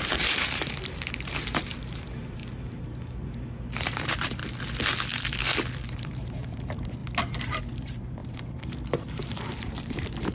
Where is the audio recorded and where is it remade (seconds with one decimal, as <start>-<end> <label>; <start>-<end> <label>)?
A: 0.0-2.4 remade; 2.4-3.8 recorded; 3.8-4.4 remade; 4.4-5.7 recorded; 5.7-7.0 remade; 7.0-7.6 recorded; 7.6-10.3 remade